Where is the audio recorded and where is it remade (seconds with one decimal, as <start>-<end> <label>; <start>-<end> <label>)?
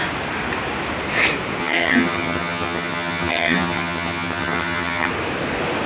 0.0-1.6 recorded; 1.6-5.1 remade; 5.1-5.9 recorded